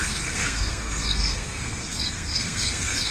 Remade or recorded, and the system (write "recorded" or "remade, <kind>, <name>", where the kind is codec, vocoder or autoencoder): remade, codec, SNAC